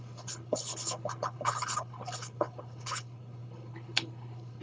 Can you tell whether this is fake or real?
fake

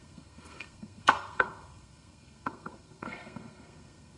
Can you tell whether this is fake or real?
fake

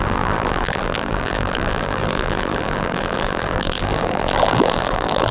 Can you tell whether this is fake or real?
fake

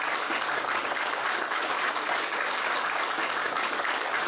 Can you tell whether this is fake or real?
fake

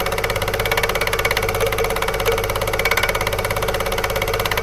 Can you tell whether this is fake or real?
real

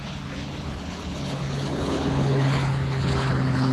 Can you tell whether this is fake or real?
fake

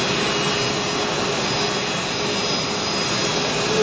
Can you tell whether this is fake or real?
real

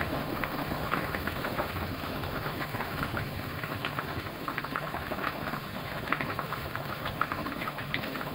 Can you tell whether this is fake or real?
fake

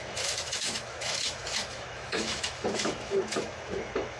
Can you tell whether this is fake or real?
fake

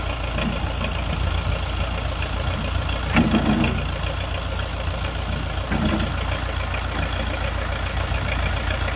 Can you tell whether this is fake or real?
real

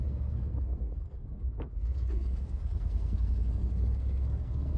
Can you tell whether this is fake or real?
fake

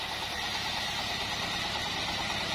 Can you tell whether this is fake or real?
real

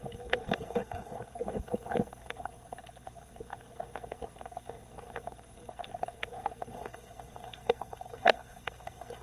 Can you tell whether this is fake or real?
fake